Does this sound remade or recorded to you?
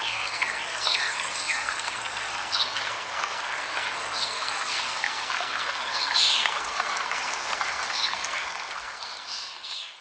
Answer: remade